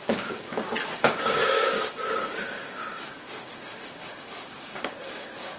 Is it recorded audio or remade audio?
remade